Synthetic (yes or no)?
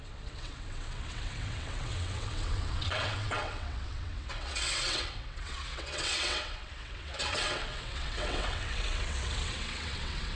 yes